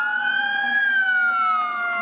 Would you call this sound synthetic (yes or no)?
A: no